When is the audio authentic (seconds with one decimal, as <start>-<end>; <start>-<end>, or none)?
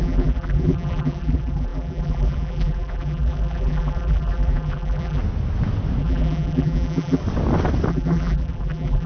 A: 5.2-6.0; 7.2-7.9